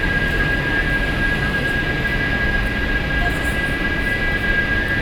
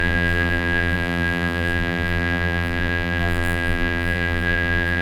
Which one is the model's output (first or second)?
second